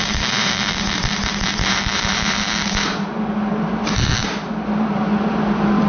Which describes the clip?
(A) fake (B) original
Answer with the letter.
A